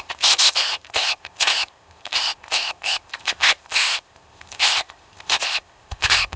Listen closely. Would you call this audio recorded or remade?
remade